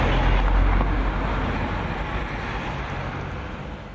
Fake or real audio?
real